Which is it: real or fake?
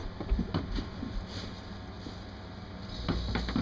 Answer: real